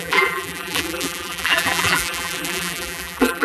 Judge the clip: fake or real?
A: fake